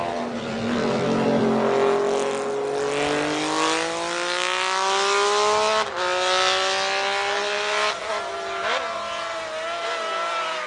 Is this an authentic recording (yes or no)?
yes